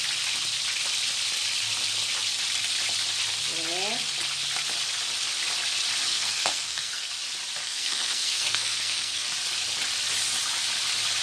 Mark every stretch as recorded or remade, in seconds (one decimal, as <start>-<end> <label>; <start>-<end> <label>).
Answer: 0.0-6.1 recorded; 6.1-7.1 remade; 7.1-7.6 recorded; 7.6-9.3 remade; 9.3-11.2 recorded